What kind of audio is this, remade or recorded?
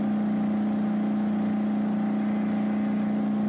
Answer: recorded